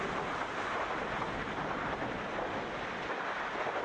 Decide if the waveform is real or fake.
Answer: real